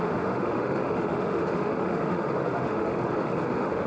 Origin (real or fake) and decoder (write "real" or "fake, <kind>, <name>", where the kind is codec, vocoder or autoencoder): fake, autoencoder, DAC-VAE